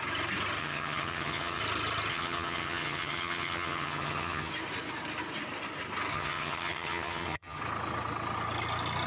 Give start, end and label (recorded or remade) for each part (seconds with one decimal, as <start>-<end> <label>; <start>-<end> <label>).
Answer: 0.0-0.6 recorded; 0.6-1.6 remade; 1.6-2.1 recorded; 2.1-4.5 remade; 4.5-6.1 recorded; 6.1-7.6 remade; 7.6-9.1 recorded